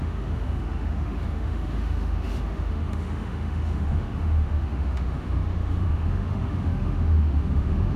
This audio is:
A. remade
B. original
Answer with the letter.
A